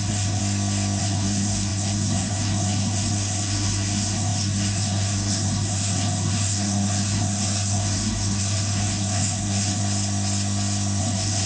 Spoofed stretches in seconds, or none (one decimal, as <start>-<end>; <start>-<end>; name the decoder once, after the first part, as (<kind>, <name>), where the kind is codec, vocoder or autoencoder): 0.0-0.4 (codec, SNAC); 1.0-9.8; 11.0-11.5